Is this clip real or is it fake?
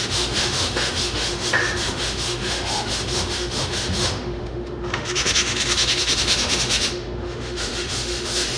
fake